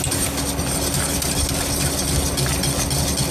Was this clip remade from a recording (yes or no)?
no